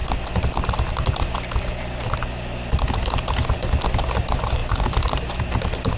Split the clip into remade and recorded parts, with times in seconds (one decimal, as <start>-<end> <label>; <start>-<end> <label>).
0.0-6.0 recorded